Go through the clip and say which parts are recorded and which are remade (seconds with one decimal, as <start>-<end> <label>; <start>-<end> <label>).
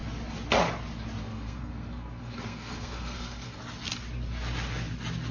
0.0-1.2 recorded; 1.2-3.6 remade; 3.6-5.3 recorded